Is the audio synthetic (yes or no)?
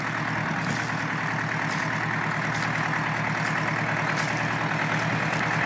no